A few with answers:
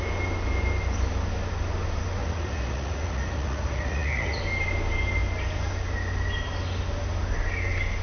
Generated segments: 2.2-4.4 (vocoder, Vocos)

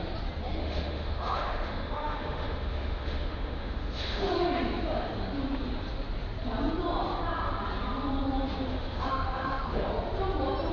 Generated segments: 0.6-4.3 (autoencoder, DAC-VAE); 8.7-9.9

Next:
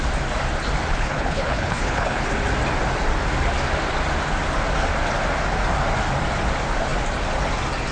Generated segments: 0.9-2.2 (codec, HILCodec)